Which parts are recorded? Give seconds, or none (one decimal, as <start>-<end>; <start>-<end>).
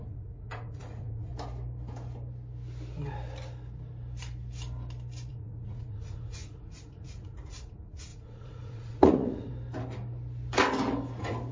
1.3-5.3; 9.5-11.5